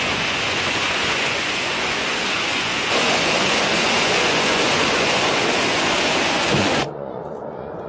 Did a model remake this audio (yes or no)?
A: yes